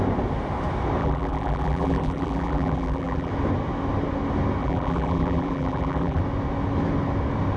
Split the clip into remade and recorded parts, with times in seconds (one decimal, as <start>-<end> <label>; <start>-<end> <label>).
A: 0.0-1.0 recorded; 1.0-3.3 remade; 3.3-4.6 recorded; 4.6-6.2 remade; 6.2-7.6 recorded